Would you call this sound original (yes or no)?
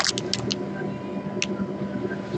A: yes